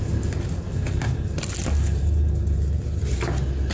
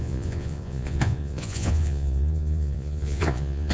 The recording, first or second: first